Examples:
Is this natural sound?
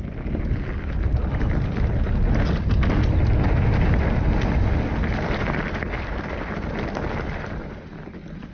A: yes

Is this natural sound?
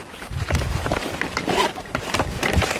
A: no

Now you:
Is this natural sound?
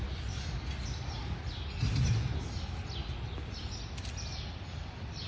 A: yes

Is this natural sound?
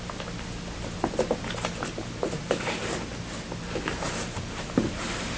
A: yes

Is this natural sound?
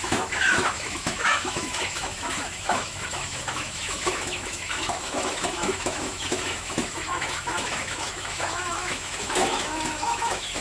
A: no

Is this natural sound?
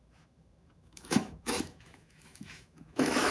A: no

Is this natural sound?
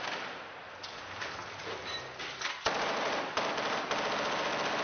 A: yes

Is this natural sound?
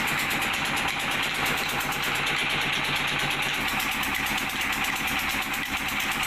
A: yes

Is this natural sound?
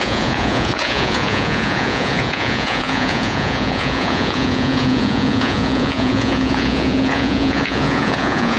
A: no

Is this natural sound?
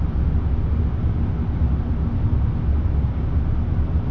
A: yes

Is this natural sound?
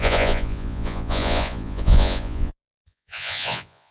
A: no